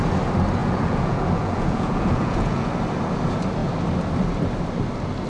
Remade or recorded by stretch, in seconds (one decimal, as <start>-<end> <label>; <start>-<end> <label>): 0.0-0.6 recorded; 0.6-2.7 remade; 2.7-5.3 recorded